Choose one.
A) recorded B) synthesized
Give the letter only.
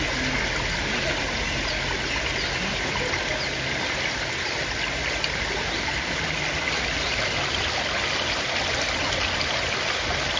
A